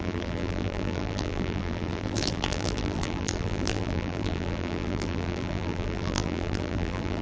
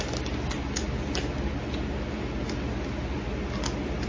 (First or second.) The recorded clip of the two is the second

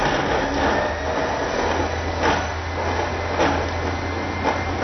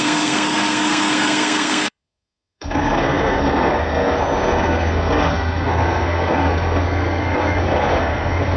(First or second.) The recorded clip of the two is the first